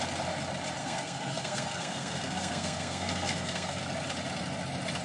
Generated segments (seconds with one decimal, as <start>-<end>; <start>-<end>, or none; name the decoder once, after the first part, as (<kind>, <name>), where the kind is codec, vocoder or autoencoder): 0.8-3.8 (codec, SNAC)